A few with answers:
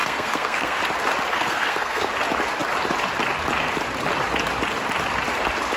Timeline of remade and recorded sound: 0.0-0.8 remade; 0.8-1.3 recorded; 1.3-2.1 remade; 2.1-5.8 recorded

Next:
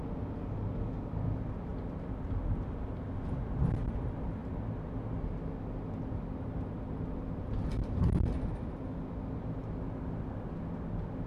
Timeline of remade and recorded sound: 0.0-1.7 recorded; 1.7-3.1 remade; 3.1-11.3 recorded